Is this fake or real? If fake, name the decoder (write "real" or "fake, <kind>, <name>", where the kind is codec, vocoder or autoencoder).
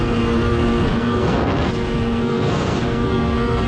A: fake, codec, SNAC